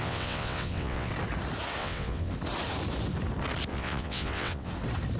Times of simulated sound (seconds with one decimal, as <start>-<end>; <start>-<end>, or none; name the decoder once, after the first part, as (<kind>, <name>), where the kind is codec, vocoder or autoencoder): 0.0-1.1 (vocoder, WaveNeXt); 1.8-2.3; 3.7-4.7